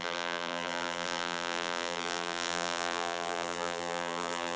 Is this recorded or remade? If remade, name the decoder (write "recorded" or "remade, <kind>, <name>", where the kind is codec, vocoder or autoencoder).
remade, vocoder, BigVGAN v2